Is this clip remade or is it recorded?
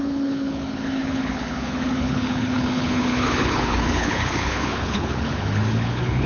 remade